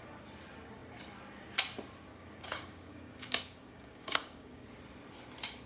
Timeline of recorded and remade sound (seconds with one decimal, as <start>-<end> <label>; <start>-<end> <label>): 0.0-2.1 recorded; 2.1-4.7 remade; 4.7-5.7 recorded